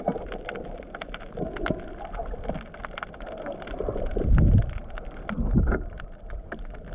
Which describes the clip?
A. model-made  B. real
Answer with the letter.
B